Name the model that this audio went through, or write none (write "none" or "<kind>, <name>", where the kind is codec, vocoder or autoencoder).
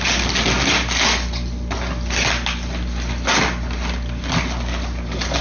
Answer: none